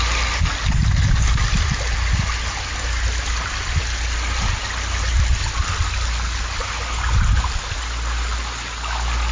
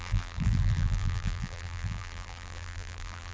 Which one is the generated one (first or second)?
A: second